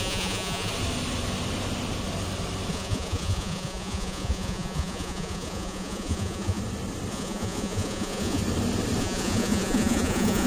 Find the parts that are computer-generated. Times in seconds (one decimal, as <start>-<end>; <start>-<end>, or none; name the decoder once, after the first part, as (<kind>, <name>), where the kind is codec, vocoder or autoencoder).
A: 0.0-0.7 (vocoder, Vocos); 2.7-6.6; 7.1-8.4; 9.0-10.5